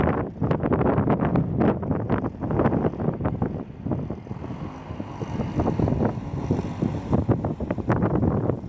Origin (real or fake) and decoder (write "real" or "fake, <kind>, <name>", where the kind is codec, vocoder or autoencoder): real